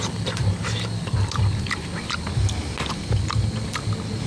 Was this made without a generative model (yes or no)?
yes